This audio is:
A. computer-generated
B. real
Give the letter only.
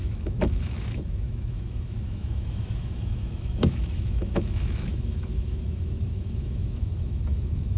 A